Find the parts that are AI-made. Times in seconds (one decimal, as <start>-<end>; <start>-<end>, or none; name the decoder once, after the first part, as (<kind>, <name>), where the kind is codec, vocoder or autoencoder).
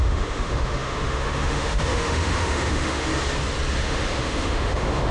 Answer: 0.0-3.1 (autoencoder, DAC-VAE); 3.8-5.1